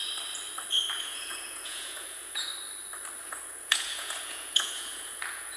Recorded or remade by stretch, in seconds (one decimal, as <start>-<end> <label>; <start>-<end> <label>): 0.0-0.9 recorded; 0.9-2.5 remade; 2.5-3.2 recorded; 3.2-5.6 remade